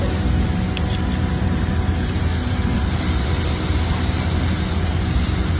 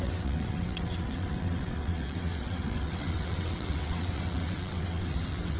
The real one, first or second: first